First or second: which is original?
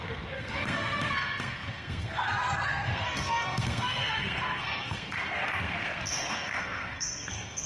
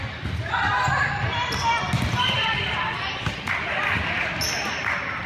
second